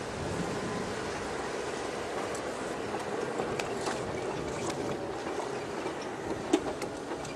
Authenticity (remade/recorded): recorded